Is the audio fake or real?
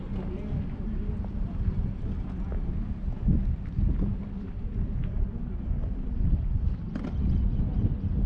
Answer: real